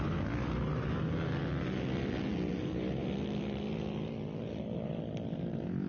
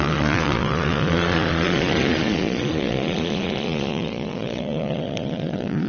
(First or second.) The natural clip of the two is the first